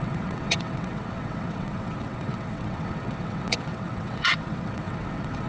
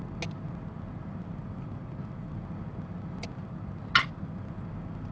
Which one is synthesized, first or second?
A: first